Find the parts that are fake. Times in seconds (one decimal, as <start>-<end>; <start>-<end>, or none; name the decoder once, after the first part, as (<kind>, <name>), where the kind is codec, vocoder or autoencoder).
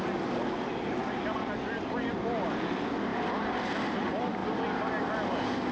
none